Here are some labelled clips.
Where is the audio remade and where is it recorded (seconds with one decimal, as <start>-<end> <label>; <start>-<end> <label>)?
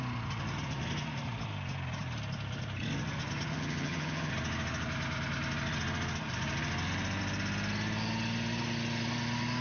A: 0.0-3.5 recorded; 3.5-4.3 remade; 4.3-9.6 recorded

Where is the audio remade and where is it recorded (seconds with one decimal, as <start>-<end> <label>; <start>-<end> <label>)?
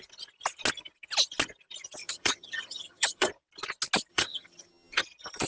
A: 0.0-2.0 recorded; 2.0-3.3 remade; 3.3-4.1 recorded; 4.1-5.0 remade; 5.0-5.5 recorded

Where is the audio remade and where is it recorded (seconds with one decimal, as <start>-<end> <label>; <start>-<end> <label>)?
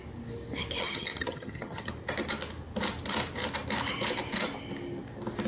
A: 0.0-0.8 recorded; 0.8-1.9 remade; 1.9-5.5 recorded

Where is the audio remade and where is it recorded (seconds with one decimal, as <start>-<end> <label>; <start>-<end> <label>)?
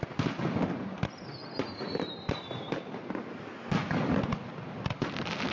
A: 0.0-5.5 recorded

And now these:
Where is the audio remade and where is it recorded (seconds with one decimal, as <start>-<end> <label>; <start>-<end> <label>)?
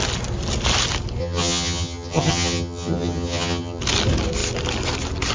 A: 0.0-1.2 recorded; 1.2-3.8 remade; 3.8-5.3 recorded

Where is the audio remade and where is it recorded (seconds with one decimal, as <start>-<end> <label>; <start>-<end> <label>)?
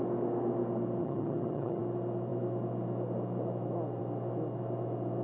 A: 0.0-1.0 recorded; 1.0-1.8 remade; 1.8-5.2 recorded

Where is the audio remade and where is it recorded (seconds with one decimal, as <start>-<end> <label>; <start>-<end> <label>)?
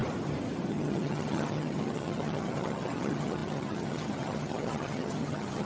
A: 0.0-0.7 recorded; 0.7-5.7 remade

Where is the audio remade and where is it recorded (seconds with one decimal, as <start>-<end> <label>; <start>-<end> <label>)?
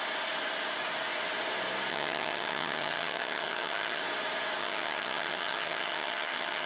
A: 0.0-1.9 recorded; 1.9-4.0 remade; 4.0-4.6 recorded; 4.6-6.7 remade